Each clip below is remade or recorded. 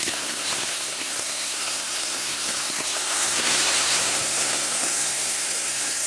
remade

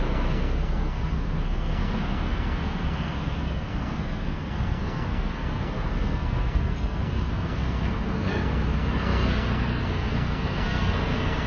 remade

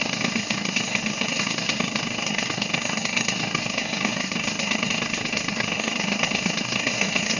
remade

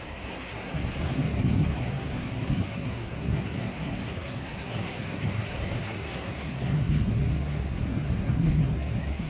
remade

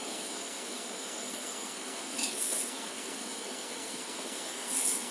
remade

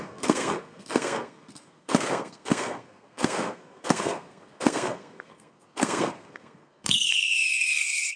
remade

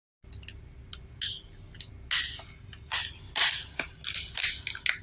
recorded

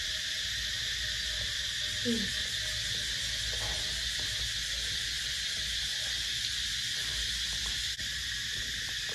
recorded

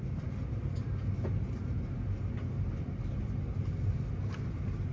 recorded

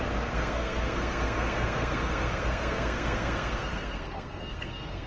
remade